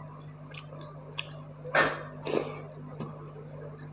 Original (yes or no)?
yes